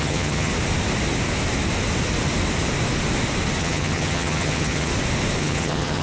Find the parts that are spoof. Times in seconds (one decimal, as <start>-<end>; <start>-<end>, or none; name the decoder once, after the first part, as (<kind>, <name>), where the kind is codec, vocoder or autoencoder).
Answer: 0.0-0.5 (vocoder, HiFi-GAN); 3.6-4.9; 5.4-6.0